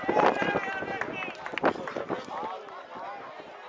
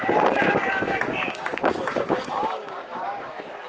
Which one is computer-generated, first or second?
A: second